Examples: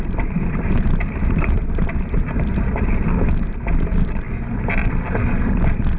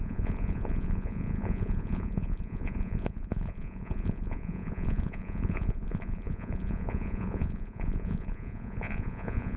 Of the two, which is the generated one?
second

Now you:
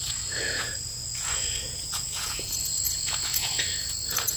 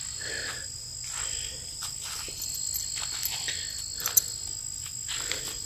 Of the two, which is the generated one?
first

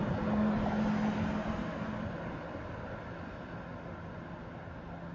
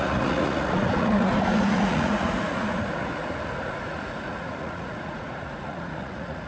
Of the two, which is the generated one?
second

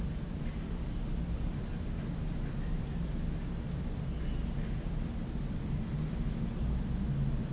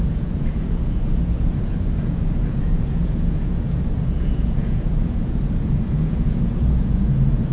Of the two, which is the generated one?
second